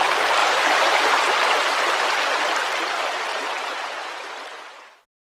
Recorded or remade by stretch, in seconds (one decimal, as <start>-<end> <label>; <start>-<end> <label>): 0.0-0.4 recorded; 0.4-1.2 remade; 1.2-3.3 recorded; 3.3-4.1 remade; 4.1-5.2 recorded